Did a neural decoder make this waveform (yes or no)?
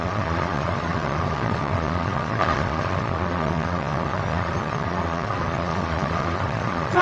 yes